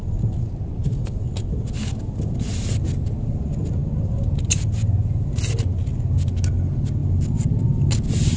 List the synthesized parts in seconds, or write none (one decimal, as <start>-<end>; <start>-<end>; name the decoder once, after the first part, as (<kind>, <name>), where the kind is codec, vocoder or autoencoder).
none